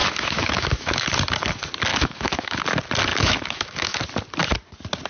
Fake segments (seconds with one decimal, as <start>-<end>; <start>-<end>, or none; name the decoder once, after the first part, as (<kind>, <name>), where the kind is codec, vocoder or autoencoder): 0.0-1.1 (autoencoder, DAC-VAE); 1.9-2.6; 3.1-4.0